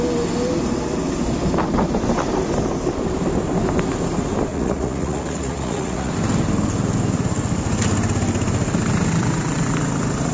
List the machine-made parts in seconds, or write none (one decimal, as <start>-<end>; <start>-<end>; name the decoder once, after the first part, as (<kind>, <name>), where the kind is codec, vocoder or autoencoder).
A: 4.5-6.1 (vocoder, Vocos)